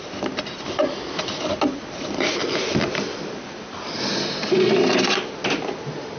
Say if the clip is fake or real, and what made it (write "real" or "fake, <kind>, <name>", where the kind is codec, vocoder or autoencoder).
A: real